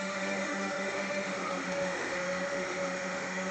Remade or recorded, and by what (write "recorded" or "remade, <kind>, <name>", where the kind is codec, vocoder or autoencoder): remade, autoencoder, DAC-VAE